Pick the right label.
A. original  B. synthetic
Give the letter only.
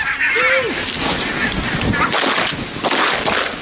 A